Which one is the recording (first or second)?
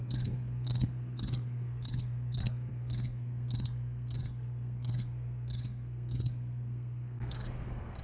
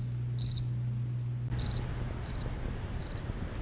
second